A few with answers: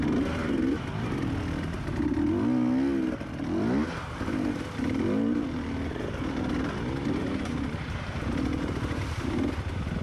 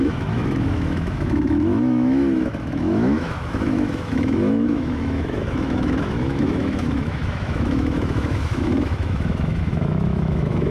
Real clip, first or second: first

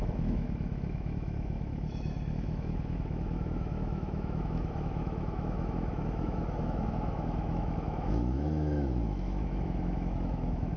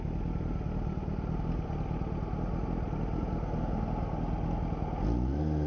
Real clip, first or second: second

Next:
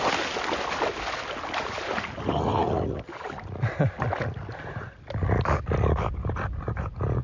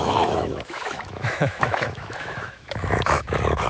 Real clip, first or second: first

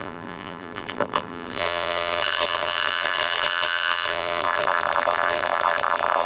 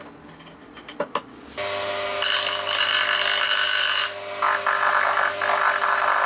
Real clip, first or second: second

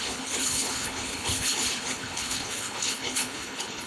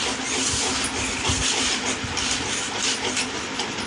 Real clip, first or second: second